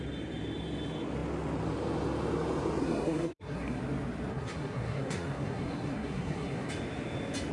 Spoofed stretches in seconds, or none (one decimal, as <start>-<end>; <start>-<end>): 2.8-3.8; 4.3-6.7